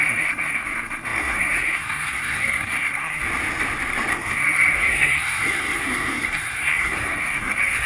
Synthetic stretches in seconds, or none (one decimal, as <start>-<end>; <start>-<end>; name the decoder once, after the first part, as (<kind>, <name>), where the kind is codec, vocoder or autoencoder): 0.0-3.2 (codec, SNAC); 4.1-7.9